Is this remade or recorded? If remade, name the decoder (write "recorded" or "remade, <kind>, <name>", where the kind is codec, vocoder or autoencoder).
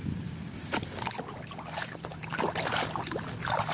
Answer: recorded